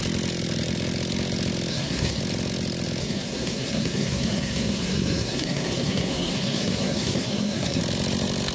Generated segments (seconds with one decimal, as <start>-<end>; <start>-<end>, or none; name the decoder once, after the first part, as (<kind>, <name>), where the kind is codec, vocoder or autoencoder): 1.7-2.2 (codec, SNAC); 3.0-7.8